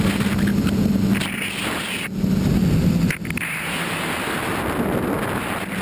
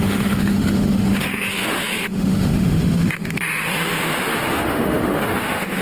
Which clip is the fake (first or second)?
second